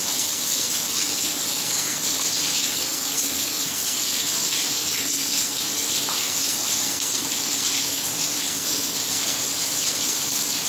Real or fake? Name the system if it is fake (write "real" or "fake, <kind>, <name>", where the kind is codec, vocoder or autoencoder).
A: fake, codec, SNAC